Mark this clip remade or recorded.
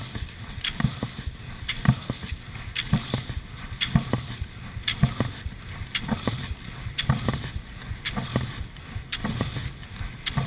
recorded